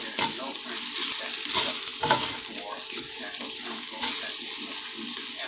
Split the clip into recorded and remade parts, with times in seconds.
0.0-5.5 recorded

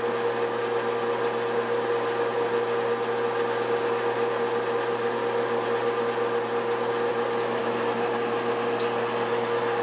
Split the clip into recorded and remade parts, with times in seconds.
0.0-9.8 recorded